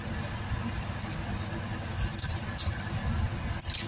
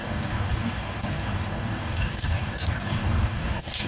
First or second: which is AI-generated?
second